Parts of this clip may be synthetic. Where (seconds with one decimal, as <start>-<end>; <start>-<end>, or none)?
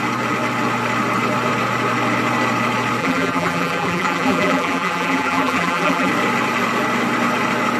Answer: 3.0-6.1